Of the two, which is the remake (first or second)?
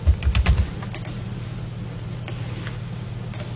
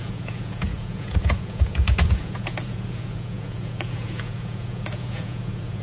second